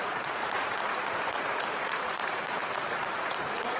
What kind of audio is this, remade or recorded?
remade